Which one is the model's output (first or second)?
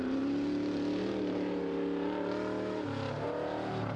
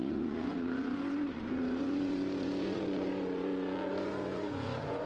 second